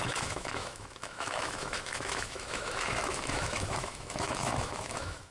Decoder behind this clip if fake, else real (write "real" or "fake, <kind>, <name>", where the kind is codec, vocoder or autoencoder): fake, autoencoder, DAC-VAE